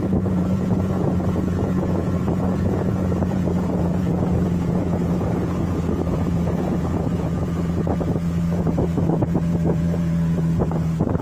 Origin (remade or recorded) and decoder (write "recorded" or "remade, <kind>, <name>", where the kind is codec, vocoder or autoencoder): remade, vocoder, Vocos